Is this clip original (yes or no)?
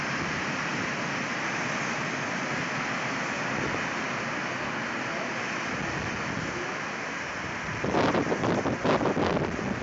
yes